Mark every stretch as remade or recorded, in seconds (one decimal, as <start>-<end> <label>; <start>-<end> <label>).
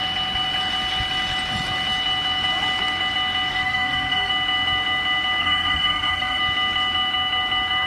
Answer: 0.0-3.5 recorded; 3.5-4.3 remade; 4.3-5.4 recorded; 5.4-6.4 remade; 6.4-7.9 recorded